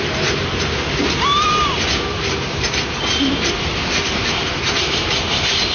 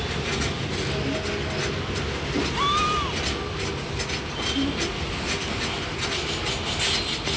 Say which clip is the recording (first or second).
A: second